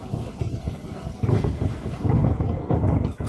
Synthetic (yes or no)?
yes